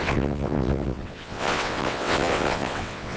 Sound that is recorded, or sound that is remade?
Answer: remade